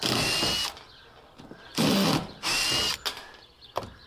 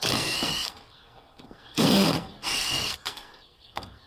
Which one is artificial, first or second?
second